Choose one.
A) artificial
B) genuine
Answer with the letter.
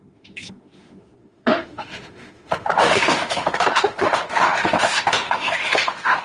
A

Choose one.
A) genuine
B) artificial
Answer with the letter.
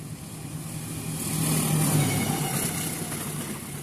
A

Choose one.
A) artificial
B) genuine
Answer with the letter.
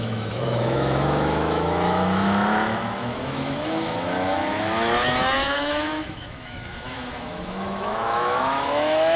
A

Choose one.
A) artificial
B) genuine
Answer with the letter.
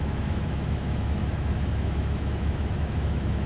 A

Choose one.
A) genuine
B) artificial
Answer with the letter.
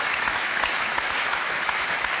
B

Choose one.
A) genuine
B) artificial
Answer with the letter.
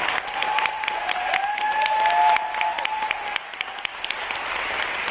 A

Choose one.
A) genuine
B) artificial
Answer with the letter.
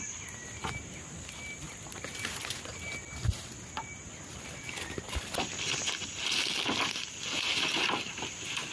A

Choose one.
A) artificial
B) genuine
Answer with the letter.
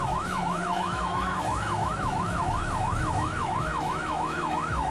A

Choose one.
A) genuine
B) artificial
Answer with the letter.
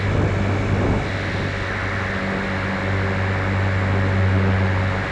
A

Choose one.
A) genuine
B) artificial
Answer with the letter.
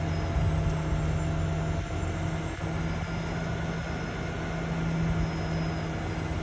A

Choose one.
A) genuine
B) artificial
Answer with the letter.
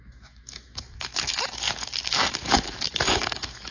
B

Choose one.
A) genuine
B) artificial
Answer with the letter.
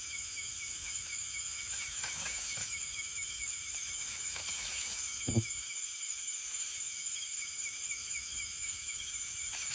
B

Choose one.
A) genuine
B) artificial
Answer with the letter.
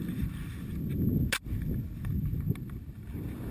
A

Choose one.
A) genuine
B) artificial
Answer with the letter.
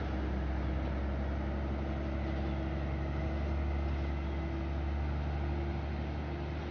A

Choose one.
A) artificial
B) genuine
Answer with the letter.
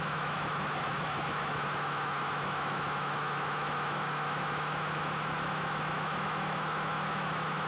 A